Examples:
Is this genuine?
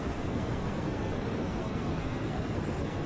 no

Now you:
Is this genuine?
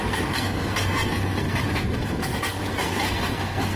no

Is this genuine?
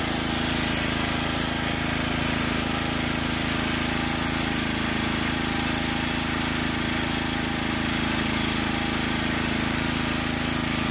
yes